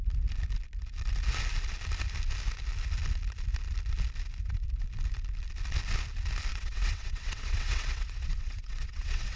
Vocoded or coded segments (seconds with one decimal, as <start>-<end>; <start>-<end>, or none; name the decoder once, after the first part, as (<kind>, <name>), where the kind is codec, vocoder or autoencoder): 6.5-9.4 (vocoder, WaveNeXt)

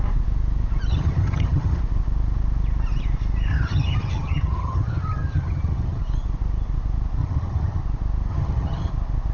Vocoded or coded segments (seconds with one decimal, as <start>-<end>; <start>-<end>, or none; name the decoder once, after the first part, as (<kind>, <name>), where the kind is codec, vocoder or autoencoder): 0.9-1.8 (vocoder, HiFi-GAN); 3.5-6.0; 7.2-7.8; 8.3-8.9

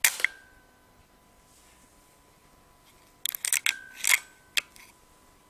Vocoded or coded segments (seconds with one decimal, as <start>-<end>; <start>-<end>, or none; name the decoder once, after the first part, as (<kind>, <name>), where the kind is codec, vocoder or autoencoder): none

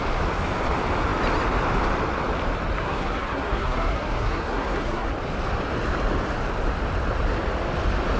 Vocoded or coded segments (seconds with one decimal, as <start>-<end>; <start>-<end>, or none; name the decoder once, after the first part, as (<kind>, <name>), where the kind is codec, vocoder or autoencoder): 2.8-5.1 (codec, SNAC)

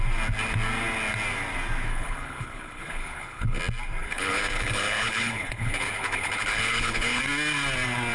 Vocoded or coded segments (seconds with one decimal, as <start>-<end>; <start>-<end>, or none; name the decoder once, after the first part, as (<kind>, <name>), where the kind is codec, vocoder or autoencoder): 1.9-3.6 (codec, HILCodec); 4.0-7.2

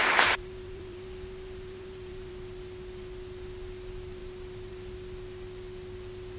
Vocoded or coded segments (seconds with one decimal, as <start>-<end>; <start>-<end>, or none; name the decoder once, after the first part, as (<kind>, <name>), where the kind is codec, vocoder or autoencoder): 0.0-2.3 (vocoder, BigVGAN v2)

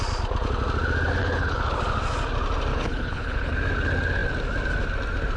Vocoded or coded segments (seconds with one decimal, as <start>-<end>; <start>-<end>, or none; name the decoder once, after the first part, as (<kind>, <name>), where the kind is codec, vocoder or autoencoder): 1.2-1.8 (codec, HILCodec); 2.7-3.5

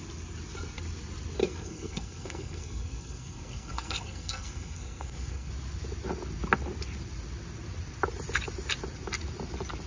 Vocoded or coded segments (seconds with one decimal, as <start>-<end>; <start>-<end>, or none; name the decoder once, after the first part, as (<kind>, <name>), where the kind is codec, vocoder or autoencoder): 1.4-5.5 (codec, SNAC)